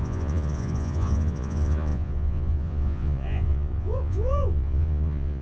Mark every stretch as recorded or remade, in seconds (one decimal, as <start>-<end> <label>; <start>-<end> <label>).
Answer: 0.0-5.4 remade